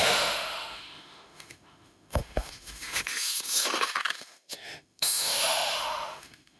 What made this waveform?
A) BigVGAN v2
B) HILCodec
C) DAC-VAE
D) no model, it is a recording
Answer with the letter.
C